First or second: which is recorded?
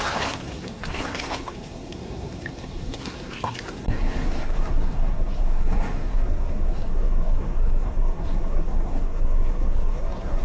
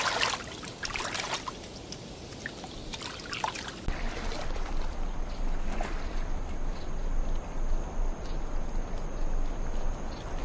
second